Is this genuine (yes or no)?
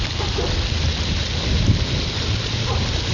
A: yes